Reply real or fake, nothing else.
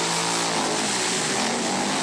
real